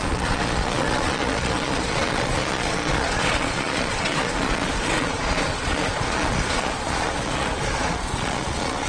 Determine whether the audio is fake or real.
fake